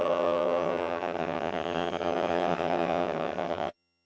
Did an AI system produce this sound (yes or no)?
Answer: yes